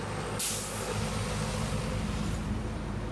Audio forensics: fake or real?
real